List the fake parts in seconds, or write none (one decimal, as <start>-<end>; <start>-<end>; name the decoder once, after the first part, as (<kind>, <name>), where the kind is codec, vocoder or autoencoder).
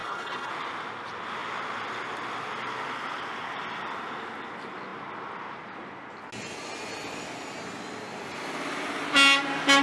0.0-0.5 (codec, HILCodec)